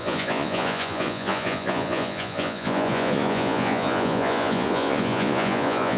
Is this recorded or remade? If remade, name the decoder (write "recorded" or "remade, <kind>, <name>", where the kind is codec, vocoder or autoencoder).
remade, vocoder, Vocos